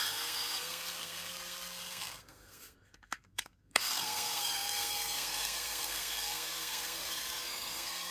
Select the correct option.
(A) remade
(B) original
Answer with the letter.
A